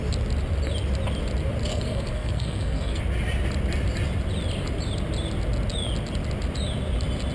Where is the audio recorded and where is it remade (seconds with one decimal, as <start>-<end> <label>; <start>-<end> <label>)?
0.0-1.7 recorded; 1.7-3.0 remade; 3.0-7.3 recorded